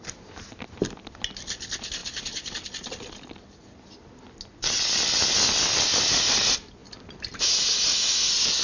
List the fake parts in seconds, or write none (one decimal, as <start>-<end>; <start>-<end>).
none

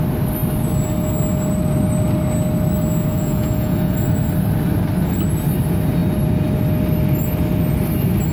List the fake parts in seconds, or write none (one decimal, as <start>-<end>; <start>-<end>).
3.1-4.1

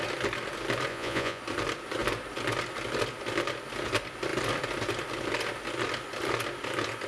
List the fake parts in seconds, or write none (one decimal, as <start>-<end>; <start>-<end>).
0.9-1.4

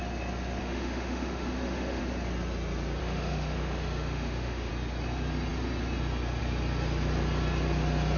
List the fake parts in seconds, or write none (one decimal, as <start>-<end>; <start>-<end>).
0.6-2.0; 3.0-4.7

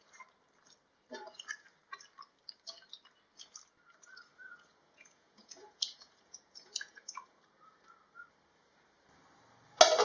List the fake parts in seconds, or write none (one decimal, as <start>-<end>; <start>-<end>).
4.3-7.4

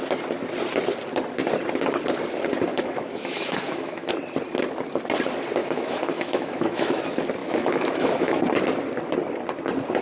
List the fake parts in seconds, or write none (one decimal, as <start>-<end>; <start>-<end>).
2.7-4.1; 5.6-7.0; 7.4-8.4

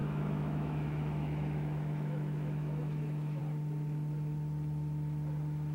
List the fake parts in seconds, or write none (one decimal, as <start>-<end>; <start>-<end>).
0.0-3.4

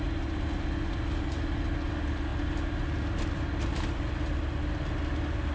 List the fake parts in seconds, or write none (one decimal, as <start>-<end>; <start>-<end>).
none